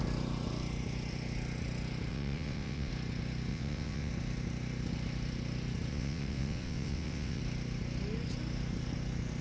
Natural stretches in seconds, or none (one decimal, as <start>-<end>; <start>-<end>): 0.0-2.1; 2.9-3.5; 4.1-5.9; 7.4-9.4